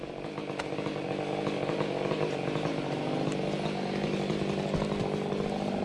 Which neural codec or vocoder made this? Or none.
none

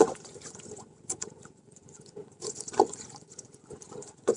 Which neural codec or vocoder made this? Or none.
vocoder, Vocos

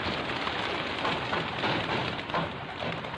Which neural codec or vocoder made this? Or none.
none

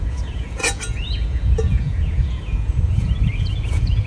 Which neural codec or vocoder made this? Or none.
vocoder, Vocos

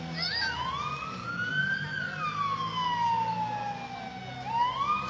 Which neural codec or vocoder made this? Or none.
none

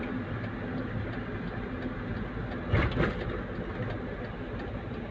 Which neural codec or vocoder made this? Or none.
none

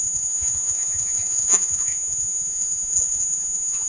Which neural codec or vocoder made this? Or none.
vocoder, Vocos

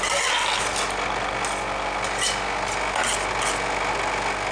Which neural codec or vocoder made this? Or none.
none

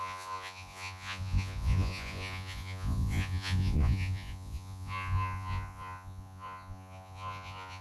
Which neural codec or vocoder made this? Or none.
vocoder, Vocos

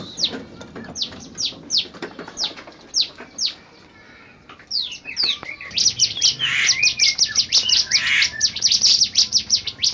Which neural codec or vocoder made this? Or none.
none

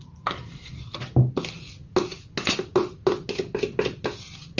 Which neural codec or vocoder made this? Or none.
none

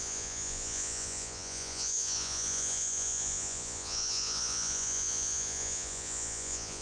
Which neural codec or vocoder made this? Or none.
vocoder, Vocos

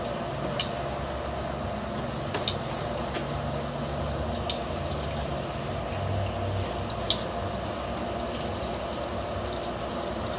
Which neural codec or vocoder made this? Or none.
none